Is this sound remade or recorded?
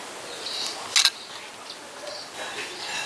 recorded